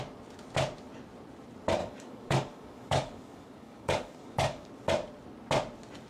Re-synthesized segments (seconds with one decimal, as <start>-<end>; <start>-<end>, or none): 1.8-4.7